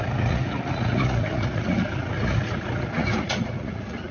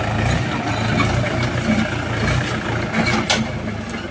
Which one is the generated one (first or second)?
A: first